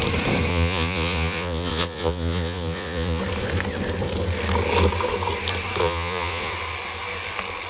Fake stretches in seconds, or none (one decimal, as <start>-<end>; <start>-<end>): 0.5-3.2; 5.8-6.5